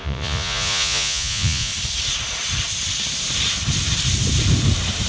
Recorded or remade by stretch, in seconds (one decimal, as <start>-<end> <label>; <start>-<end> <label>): 0.0-1.7 remade; 1.7-5.1 recorded